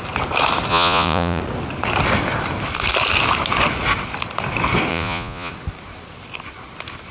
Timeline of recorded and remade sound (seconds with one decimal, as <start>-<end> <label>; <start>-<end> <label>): 0.0-0.7 recorded; 0.7-1.4 remade; 1.4-4.9 recorded; 4.9-5.5 remade; 5.5-7.1 recorded